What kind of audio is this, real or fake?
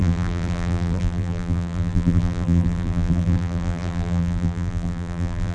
fake